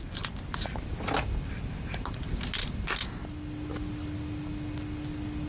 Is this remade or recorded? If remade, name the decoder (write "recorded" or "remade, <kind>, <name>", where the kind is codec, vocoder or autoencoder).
recorded